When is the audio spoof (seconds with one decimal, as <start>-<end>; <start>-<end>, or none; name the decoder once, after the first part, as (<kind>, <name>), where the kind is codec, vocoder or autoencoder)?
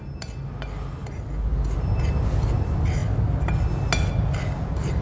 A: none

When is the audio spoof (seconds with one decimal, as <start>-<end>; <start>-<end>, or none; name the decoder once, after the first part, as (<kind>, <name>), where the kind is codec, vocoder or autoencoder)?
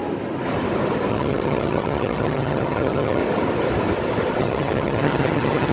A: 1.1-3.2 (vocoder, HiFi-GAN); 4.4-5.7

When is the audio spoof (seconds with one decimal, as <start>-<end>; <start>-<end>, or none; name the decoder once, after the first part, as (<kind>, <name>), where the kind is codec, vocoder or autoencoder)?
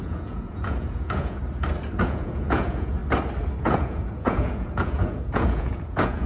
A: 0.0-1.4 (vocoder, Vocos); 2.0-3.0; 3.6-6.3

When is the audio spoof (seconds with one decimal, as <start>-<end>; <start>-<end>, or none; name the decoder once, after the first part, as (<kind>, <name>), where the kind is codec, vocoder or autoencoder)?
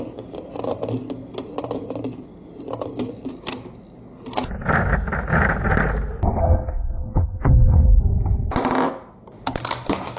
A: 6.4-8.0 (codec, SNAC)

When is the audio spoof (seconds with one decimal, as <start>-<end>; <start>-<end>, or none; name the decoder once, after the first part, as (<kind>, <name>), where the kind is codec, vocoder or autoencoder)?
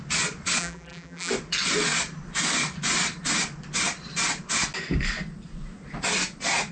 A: 0.6-1.3 (vocoder, BigVGAN v2)